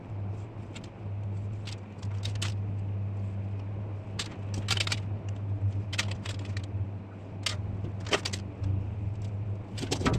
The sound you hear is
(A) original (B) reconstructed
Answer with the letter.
A